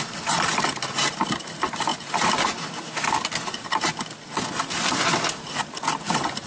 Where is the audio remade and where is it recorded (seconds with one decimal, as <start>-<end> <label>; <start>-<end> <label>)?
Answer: 0.0-6.5 recorded